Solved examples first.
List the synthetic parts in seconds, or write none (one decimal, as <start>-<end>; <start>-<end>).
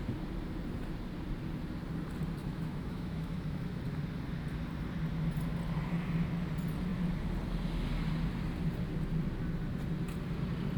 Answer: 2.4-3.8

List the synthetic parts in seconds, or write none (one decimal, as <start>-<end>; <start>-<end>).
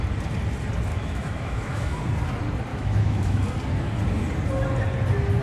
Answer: 0.9-2.0; 2.7-3.4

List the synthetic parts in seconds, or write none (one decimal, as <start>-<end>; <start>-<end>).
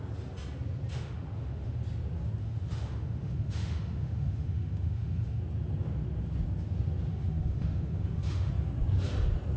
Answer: 0.9-1.8; 2.4-5.4; 7.1-8.5